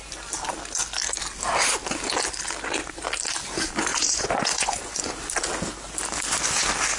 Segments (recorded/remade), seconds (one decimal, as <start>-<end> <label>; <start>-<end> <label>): 0.0-3.9 recorded; 3.9-5.1 remade; 5.1-7.0 recorded

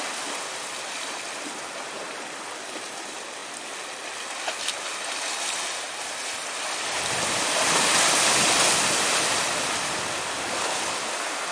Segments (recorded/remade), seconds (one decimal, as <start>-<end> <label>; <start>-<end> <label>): 0.0-11.5 recorded